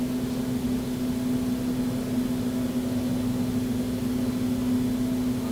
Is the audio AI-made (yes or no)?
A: no